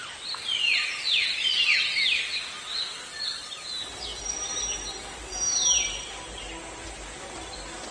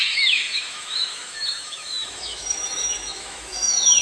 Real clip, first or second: first